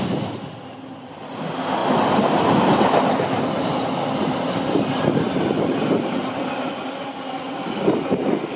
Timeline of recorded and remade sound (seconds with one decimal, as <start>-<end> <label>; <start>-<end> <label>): 0.0-8.6 recorded